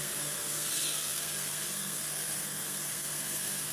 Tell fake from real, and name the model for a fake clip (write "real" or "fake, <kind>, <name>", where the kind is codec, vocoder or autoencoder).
fake, codec, SNAC